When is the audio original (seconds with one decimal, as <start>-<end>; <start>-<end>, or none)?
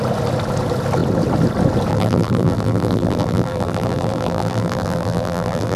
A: 0.0-1.9